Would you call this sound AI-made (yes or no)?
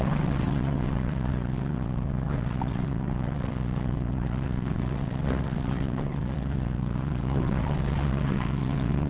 yes